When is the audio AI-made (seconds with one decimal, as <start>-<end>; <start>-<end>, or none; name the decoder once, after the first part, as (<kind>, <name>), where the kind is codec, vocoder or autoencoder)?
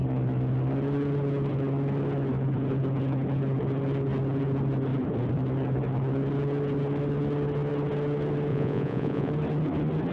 8.5-9.3 (vocoder, Vocos)